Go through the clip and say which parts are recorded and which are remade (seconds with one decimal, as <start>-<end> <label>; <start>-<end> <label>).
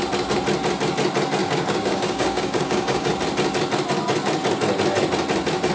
0.0-1.4 recorded; 1.4-3.1 remade; 3.1-5.7 recorded